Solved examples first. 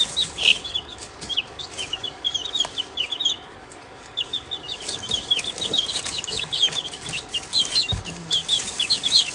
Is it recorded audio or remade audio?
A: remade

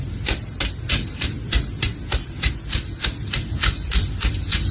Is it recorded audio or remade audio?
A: recorded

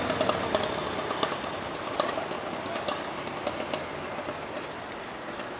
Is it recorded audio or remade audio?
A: recorded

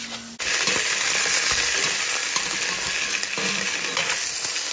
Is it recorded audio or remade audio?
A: recorded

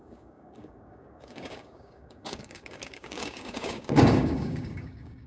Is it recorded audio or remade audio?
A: remade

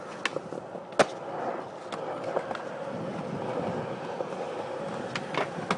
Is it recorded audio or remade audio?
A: recorded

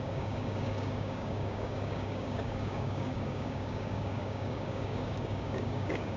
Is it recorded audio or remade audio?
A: remade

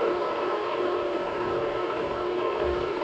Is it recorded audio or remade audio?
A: remade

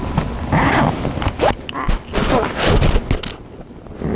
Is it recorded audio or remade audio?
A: recorded